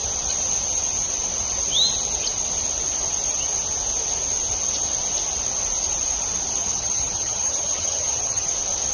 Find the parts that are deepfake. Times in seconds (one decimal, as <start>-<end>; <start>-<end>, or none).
6.6-8.5